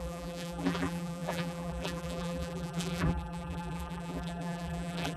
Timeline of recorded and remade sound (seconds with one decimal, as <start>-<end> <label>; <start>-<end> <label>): 0.0-5.2 remade